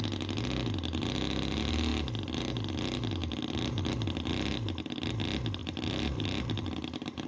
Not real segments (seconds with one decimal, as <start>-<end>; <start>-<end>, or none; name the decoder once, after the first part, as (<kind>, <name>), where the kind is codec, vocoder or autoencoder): 3.2-3.8 (vocoder, BigVGAN v2); 5.6-7.3